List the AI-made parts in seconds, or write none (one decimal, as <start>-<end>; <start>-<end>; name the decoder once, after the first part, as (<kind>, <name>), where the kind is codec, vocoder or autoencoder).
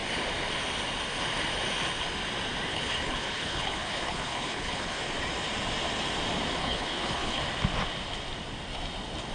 2.7-5.0 (codec, HILCodec); 6.6-7.4